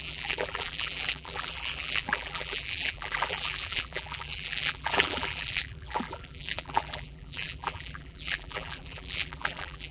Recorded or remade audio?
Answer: remade